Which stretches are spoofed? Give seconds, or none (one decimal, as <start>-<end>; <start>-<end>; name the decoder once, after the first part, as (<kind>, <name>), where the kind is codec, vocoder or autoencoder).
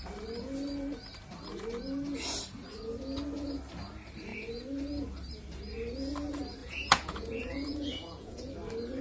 6.6-8.5 (vocoder, Vocos)